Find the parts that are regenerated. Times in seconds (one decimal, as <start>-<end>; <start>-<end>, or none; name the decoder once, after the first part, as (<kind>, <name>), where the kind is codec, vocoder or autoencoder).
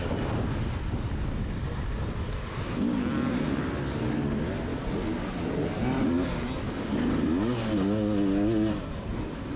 none